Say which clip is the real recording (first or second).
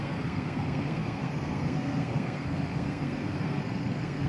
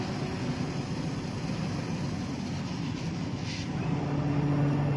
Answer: second